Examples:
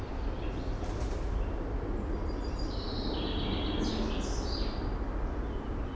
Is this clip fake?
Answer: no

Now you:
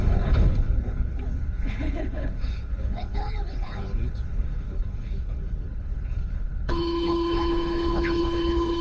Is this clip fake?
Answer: yes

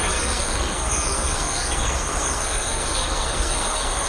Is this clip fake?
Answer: yes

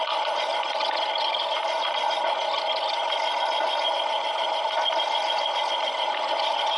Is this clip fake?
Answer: no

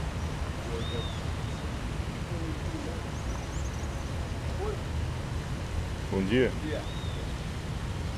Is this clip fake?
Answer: no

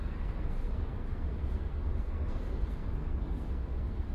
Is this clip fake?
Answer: yes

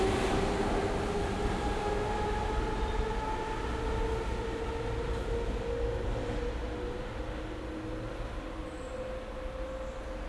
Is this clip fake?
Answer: no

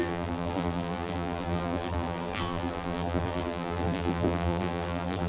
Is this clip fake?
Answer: yes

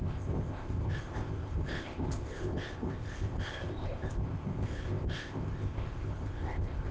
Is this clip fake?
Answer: yes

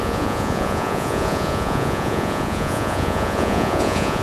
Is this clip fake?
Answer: yes